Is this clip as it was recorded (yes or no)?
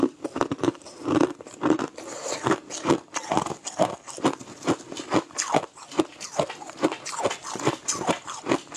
yes